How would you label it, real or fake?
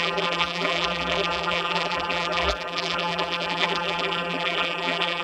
fake